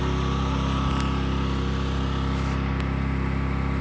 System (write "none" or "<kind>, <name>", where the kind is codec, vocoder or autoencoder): none